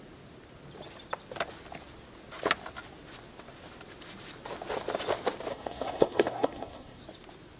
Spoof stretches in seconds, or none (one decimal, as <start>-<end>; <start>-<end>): 5.5-7.0